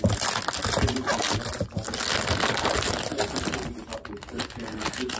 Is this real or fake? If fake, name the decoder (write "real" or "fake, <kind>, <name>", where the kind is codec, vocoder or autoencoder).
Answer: real